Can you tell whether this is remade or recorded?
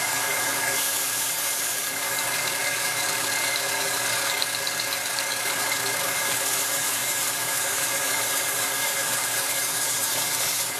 remade